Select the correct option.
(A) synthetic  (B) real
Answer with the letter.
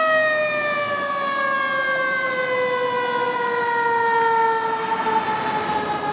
B